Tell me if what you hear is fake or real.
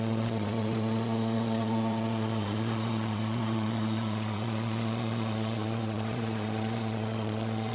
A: fake